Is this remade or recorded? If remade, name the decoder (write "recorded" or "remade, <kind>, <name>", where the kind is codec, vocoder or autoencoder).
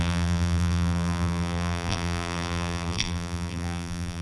remade, vocoder, BigVGAN v2